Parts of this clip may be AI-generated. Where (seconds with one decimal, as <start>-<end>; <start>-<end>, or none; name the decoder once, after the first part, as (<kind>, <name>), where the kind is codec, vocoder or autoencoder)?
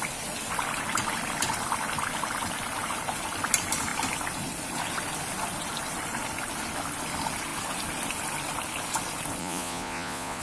9.4-10.4 (vocoder, Vocos)